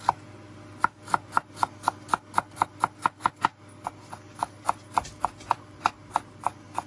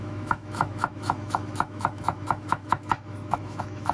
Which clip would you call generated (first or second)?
second